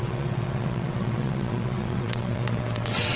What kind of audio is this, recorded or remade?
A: remade